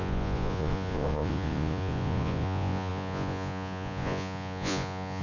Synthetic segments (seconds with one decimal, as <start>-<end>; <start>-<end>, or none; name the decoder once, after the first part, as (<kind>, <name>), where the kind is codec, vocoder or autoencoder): 0.0-5.2 (vocoder, Vocos)